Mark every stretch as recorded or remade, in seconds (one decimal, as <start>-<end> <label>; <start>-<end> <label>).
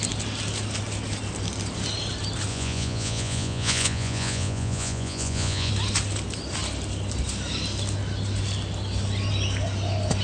0.0-2.5 recorded; 2.5-5.7 remade; 5.7-10.2 recorded